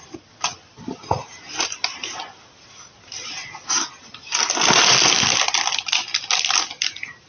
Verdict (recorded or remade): recorded